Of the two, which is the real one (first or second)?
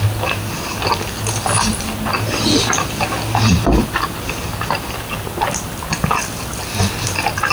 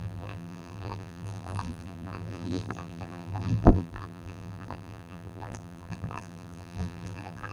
first